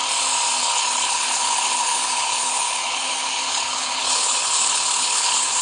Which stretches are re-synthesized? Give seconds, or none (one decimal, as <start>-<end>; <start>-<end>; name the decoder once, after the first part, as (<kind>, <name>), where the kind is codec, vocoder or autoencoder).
0.6-5.6 (codec, HILCodec)